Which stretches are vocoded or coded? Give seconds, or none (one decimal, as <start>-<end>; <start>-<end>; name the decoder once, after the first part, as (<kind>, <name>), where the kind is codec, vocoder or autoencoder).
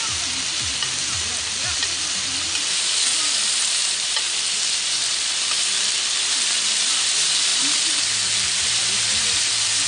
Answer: 0.0-9.9 (vocoder, BigVGAN v2)